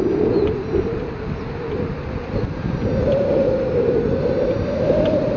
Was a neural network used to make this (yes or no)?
no